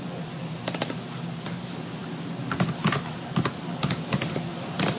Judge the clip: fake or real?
real